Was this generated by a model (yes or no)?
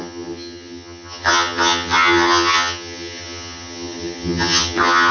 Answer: yes